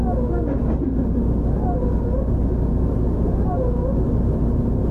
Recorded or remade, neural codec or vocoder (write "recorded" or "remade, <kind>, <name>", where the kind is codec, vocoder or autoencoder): recorded